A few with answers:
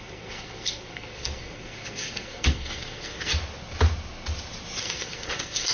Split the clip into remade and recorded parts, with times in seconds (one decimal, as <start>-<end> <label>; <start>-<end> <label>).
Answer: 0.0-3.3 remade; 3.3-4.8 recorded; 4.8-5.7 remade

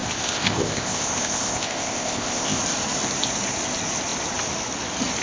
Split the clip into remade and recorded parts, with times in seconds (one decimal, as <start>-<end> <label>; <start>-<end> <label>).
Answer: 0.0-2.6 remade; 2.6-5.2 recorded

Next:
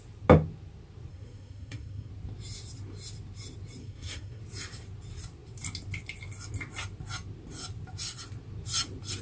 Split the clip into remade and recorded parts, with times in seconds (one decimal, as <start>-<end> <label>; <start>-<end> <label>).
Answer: 0.0-1.1 recorded; 1.1-2.1 remade; 2.1-3.8 recorded; 3.8-4.4 remade; 4.4-9.2 recorded

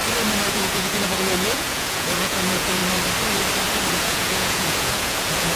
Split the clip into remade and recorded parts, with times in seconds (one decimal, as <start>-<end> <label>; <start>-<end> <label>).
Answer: 0.0-0.5 recorded; 0.5-2.8 remade; 2.8-3.9 recorded; 3.9-5.6 remade

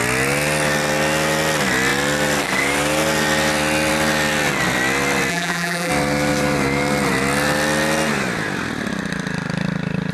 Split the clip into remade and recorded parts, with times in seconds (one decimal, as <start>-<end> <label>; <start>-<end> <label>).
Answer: 0.0-5.3 recorded; 5.3-5.9 remade; 5.9-10.1 recorded

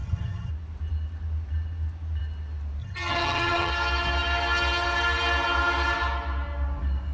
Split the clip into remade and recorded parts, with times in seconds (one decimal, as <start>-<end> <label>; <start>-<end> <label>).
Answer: 0.0-0.5 remade; 0.5-2.8 recorded; 2.8-3.7 remade; 3.7-7.1 recorded